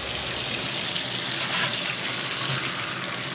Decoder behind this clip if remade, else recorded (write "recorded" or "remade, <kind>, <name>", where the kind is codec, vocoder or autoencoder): recorded